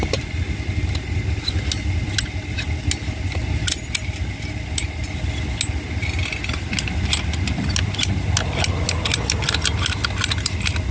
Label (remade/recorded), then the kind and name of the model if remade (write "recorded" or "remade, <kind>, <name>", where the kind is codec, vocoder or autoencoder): recorded